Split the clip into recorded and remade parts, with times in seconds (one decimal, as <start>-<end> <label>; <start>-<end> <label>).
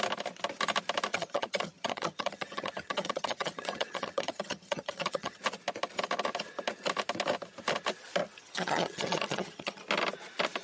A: 0.0-1.1 recorded; 1.1-5.4 remade; 5.4-8.4 recorded; 8.4-9.8 remade; 9.8-10.6 recorded